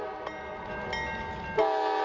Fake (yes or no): no